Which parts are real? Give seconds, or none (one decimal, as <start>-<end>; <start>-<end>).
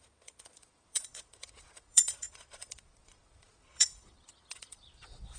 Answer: none